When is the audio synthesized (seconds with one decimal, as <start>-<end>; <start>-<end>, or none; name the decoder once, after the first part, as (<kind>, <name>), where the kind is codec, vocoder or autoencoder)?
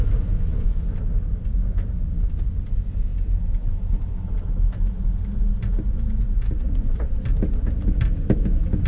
none